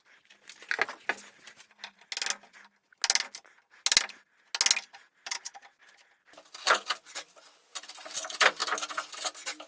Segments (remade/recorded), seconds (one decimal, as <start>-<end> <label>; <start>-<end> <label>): 0.0-9.7 recorded